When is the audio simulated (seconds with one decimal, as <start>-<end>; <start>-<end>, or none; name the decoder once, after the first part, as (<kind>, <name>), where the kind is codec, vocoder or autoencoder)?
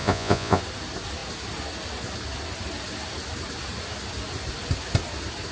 0.0-0.6 (vocoder, Vocos)